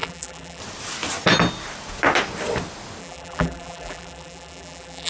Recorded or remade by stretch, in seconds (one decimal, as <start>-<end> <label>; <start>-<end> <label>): 0.0-0.6 remade; 0.6-3.0 recorded; 3.0-5.1 remade